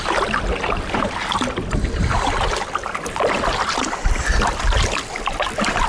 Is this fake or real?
real